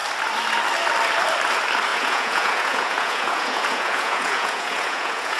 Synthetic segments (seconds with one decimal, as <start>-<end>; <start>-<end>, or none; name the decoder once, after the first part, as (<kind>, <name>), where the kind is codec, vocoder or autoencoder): 1.9-5.4 (vocoder, Vocos)